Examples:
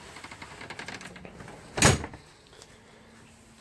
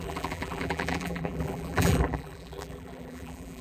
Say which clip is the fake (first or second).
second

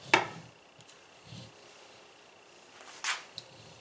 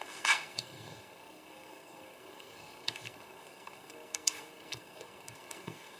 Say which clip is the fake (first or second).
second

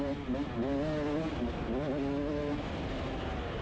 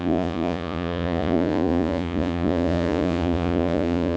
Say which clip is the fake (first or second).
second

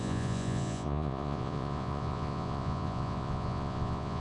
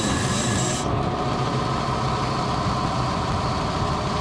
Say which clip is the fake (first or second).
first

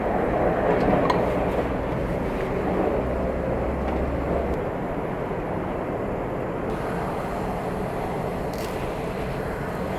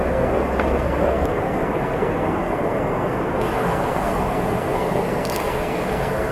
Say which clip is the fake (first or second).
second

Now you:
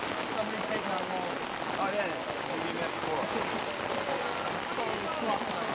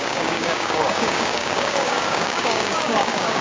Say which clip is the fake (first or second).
second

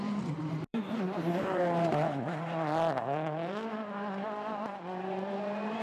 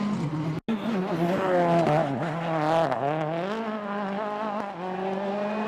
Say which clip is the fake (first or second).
first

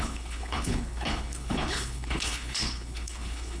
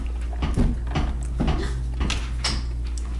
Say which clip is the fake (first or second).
first